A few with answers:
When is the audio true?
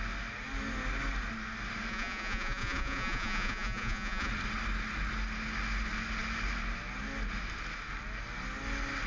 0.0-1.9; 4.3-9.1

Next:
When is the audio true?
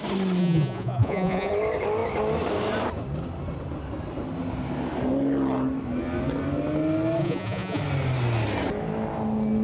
0.0-0.4; 1.5-7.2; 7.8-9.6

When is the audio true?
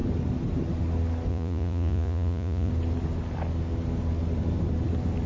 0.0-1.3; 2.7-5.3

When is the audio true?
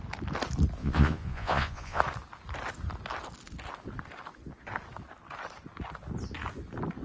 0.0-0.8; 2.0-7.0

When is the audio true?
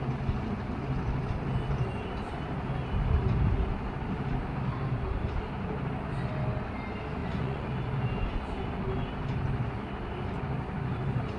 0.0-7.2; 7.7-11.4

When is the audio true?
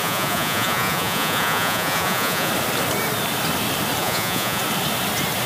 2.5-4.0; 4.6-5.5